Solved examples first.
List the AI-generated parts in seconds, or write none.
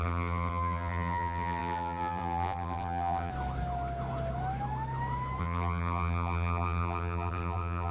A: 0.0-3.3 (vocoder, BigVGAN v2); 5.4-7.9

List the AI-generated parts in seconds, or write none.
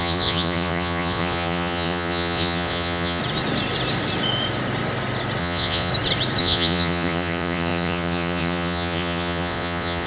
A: 0.0-3.2 (vocoder, Vocos); 5.4-5.9; 6.4-10.1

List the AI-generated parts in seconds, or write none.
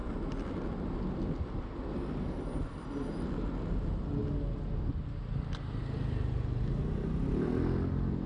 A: none